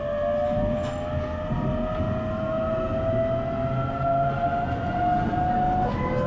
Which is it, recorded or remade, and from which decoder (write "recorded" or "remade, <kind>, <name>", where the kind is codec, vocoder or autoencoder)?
recorded